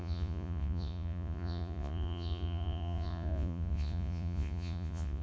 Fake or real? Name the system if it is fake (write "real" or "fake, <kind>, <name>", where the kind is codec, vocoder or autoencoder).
fake, vocoder, Vocos